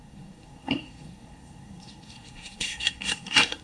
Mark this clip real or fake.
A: fake